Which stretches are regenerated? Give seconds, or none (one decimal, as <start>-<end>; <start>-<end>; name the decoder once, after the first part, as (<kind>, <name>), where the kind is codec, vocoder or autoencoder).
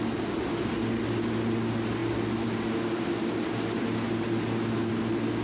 none